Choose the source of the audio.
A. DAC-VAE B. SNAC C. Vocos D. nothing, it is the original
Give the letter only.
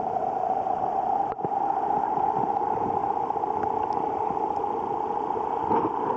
D